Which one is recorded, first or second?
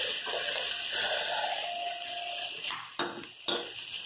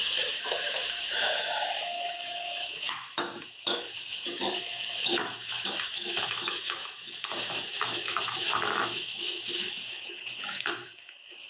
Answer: first